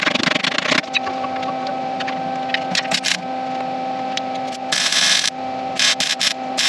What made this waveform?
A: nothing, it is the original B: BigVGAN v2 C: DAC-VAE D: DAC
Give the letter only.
A